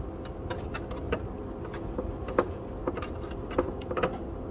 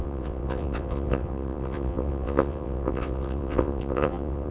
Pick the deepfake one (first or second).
second